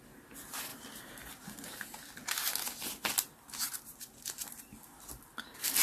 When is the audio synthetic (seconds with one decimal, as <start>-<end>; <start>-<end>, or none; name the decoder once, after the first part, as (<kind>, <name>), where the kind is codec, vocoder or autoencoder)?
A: none